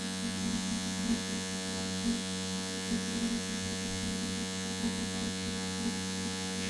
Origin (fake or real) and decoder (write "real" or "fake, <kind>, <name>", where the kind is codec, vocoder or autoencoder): fake, vocoder, Vocos